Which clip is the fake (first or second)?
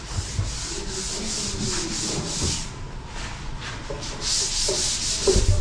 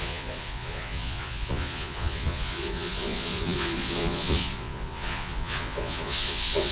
second